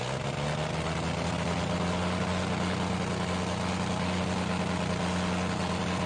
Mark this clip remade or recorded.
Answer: recorded